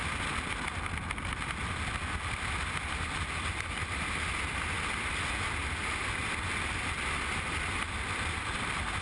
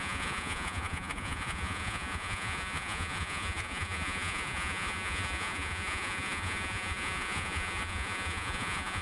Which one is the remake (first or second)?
second